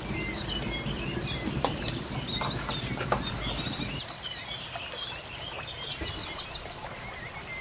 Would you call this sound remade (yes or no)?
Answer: no